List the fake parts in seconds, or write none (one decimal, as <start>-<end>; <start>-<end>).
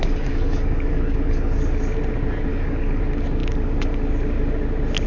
0.0-1.6; 2.5-3.0